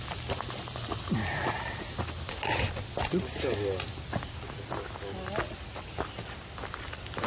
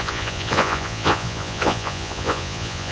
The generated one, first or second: second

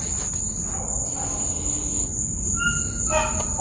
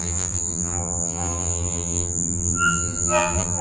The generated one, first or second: second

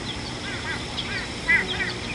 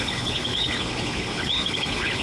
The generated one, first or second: second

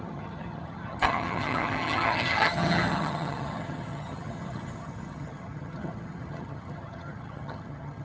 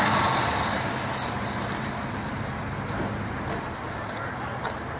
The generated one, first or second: first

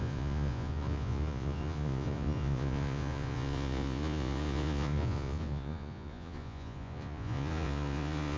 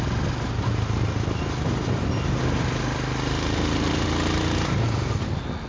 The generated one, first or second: first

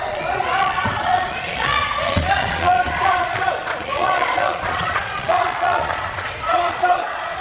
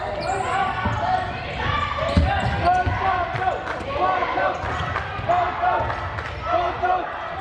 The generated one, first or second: first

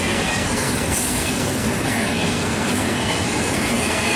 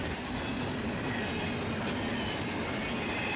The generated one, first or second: first